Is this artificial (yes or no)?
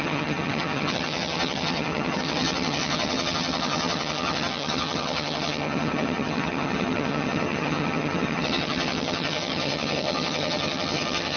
yes